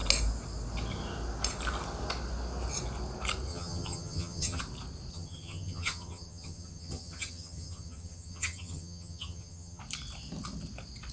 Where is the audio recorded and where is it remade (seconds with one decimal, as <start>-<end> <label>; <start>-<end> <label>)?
0.0-3.5 recorded; 3.5-4.6 remade; 4.6-5.1 recorded; 5.1-9.8 remade; 9.8-11.1 recorded